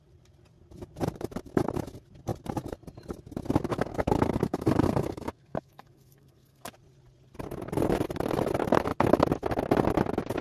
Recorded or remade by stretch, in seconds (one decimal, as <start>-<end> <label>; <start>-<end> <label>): 0.0-3.7 recorded; 3.7-6.7 remade; 6.7-10.4 recorded